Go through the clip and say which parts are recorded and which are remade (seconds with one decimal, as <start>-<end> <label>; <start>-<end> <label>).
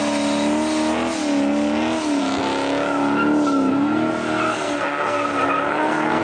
0.0-3.7 recorded; 3.7-6.2 remade